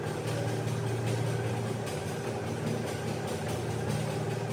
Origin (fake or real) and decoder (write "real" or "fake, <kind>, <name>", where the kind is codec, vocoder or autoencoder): real